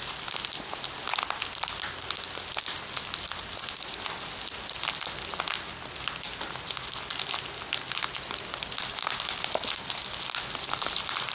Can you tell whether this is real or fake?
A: real